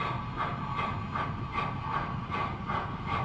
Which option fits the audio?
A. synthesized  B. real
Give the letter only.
B